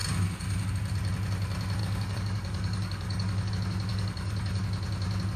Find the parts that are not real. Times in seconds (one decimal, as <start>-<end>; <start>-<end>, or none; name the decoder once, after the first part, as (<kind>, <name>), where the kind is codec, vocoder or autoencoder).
1.8-3.5 (codec, DAC); 3.9-4.6